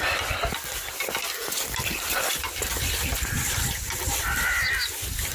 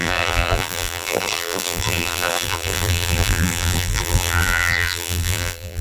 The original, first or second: first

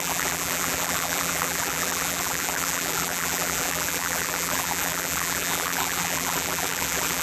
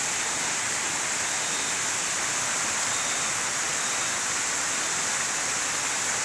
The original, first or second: second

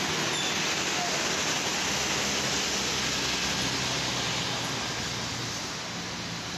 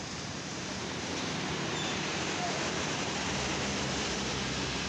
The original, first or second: first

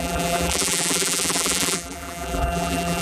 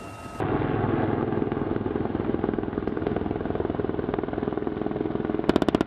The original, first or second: second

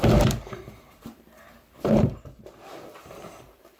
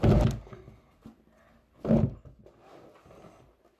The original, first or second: second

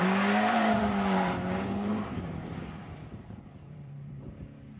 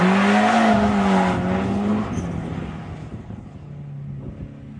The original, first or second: second